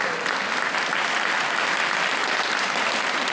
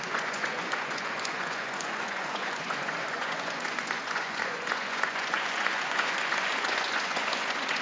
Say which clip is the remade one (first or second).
second